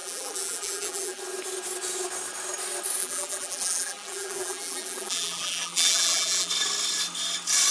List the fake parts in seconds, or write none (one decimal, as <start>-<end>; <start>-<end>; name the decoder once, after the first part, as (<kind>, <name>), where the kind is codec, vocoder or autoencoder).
0.0-1.2 (vocoder, BigVGAN v2); 3.0-6.5